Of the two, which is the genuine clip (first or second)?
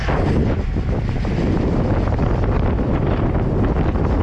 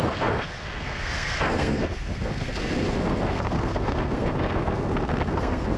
first